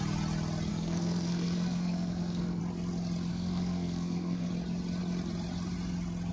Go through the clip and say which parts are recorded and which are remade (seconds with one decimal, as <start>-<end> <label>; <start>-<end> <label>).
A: 0.0-0.7 recorded; 0.7-2.6 remade; 2.6-3.3 recorded; 3.3-4.5 remade; 4.5-6.3 recorded